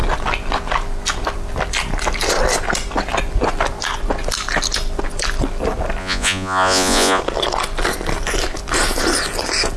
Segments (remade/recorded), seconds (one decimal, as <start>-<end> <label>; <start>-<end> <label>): 0.0-6.0 recorded; 6.0-7.2 remade; 7.2-9.8 recorded